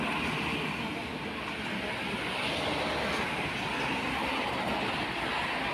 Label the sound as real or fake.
real